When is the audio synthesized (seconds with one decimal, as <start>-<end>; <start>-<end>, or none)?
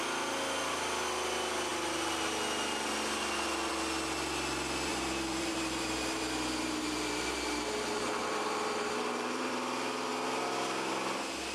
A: 4.9-9.5